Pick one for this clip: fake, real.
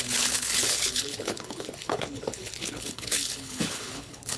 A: fake